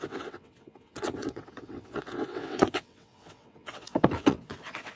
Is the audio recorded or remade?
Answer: remade